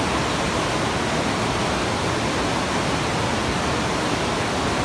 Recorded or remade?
recorded